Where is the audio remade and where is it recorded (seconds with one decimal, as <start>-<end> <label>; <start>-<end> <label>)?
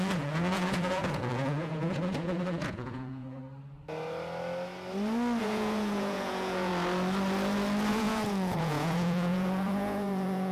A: 0.0-3.4 remade; 3.4-5.4 recorded; 5.4-6.7 remade; 6.7-7.9 recorded; 7.9-10.5 remade